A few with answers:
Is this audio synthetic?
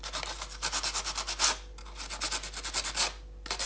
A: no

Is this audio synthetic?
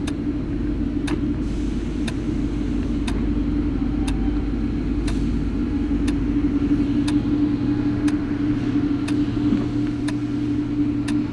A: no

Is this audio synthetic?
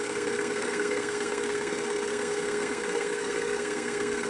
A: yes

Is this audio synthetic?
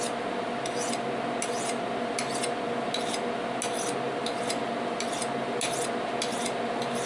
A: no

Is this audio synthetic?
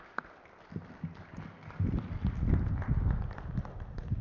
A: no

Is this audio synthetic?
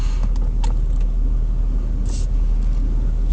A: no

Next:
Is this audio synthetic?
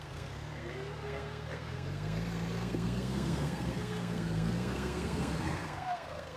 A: yes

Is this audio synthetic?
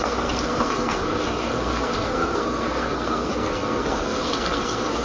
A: yes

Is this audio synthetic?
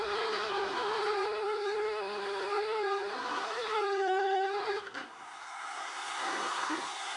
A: yes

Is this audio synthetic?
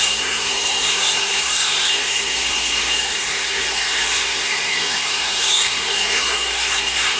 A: yes